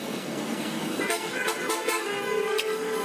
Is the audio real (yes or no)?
no